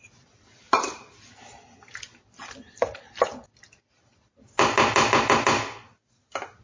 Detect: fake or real real